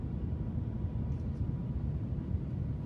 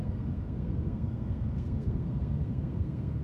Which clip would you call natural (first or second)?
first